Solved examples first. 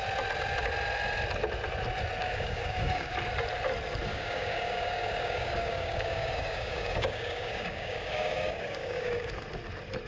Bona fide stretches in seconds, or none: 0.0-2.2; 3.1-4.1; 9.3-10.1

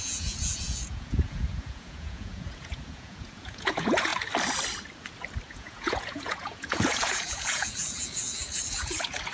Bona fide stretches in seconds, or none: 4.1-5.5

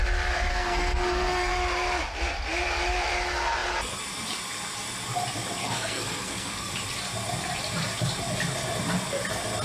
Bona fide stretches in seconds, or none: 0.0-0.5; 1.5-5.6; 6.7-9.6

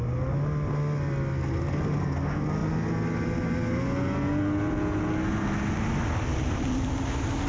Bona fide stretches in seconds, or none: 0.0-7.5

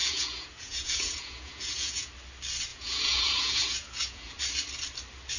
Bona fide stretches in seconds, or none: 2.1-2.7; 4.4-5.4

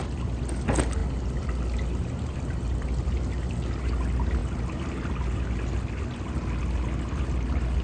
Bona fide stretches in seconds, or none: 0.0-1.0; 3.8-7.8